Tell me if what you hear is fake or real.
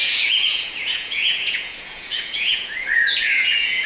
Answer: fake